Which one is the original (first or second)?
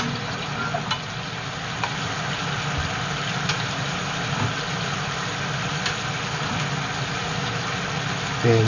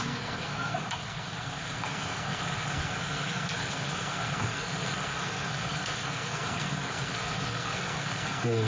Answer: first